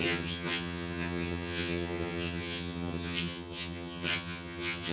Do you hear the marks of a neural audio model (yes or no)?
yes